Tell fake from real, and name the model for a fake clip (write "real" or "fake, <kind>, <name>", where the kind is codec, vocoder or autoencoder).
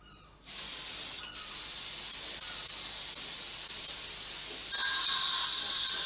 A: real